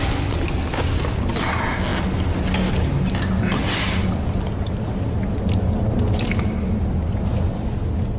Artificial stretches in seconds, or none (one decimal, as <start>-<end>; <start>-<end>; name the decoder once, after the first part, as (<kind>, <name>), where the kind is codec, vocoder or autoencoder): none